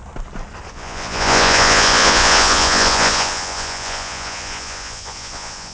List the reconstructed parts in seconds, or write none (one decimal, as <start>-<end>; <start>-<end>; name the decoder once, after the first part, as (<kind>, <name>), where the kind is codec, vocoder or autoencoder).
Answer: 0.7-5.7 (vocoder, Vocos)